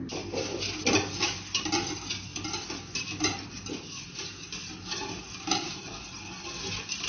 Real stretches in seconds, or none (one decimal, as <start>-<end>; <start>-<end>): 0.0-7.1